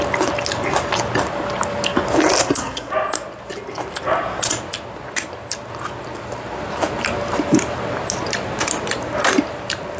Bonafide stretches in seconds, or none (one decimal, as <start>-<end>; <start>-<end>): 0.0-2.4; 2.9-10.0